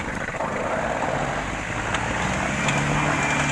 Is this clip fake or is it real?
real